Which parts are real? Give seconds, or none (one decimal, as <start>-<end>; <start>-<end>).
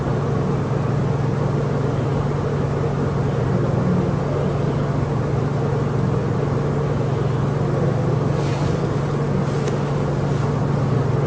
0.0-11.3